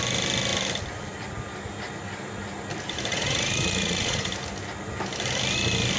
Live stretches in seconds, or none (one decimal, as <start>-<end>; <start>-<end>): 0.0-3.1; 4.3-6.0